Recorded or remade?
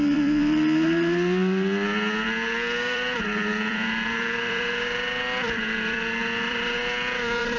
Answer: remade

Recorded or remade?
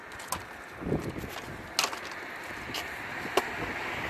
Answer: recorded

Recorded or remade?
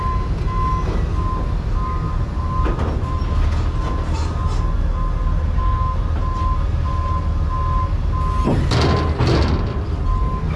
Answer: recorded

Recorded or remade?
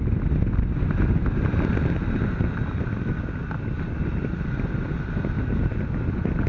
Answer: recorded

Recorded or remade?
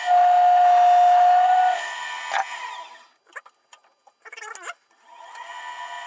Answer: recorded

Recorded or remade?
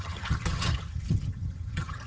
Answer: remade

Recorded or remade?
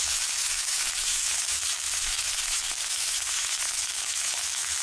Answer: remade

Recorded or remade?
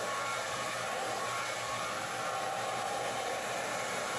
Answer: recorded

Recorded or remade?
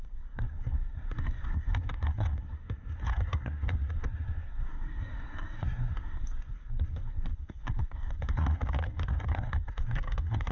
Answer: remade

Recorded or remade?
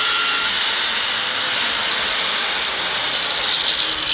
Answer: recorded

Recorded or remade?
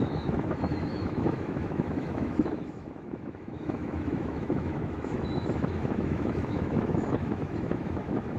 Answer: remade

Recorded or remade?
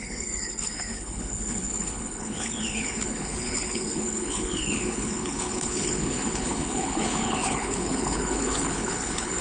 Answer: remade